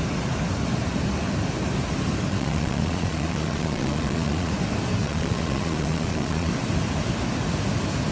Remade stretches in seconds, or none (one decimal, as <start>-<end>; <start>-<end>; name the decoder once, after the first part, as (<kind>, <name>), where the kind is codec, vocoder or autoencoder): 2.3-4.5 (vocoder, Vocos); 5.0-6.5